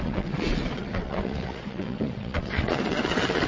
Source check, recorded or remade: remade